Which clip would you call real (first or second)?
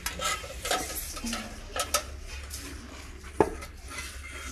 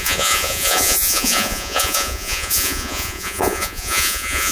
first